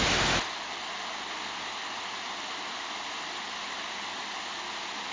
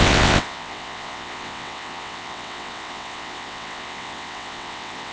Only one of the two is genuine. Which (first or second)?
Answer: first